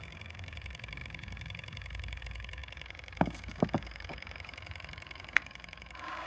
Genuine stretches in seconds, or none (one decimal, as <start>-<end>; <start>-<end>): none